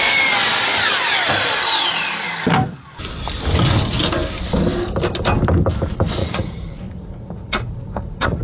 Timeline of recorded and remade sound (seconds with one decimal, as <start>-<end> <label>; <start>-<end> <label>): 0.0-6.2 recorded; 6.2-8.4 remade